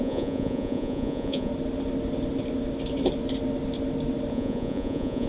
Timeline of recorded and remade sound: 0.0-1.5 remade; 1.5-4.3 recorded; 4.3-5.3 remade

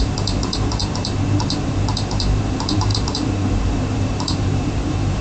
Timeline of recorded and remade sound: 0.0-0.8 remade; 0.8-1.6 recorded; 1.6-5.2 remade

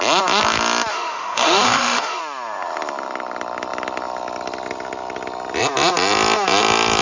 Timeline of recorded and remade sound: 0.0-0.9 recorded; 0.9-2.2 remade; 2.2-7.0 recorded